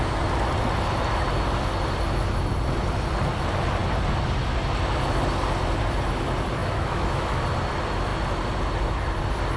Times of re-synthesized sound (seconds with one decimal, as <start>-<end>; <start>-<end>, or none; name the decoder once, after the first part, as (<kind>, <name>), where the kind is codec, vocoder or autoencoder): 6.6-7.4 (autoencoder, DAC-VAE)